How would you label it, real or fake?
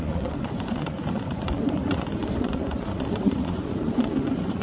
fake